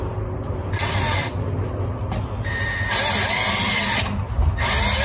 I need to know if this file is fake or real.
real